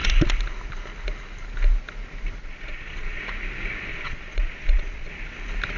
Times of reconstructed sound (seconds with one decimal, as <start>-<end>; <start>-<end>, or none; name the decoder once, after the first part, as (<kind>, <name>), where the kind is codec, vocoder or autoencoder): 2.4-3.2 (vocoder, Vocos); 3.9-5.1